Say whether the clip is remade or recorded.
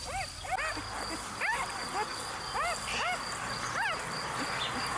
recorded